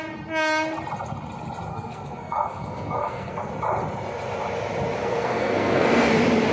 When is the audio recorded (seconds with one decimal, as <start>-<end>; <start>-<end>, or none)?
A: 0.0-1.7; 3.5-5.0; 6.1-6.5